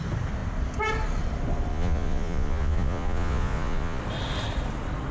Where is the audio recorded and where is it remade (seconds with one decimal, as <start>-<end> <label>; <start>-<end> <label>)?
0.0-1.7 recorded; 1.7-4.0 remade; 4.0-5.1 recorded